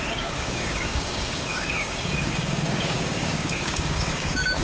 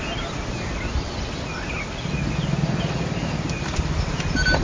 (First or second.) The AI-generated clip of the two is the first